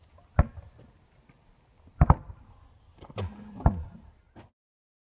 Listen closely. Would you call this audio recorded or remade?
recorded